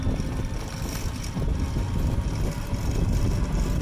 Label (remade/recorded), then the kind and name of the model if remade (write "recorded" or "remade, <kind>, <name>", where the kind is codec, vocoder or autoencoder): recorded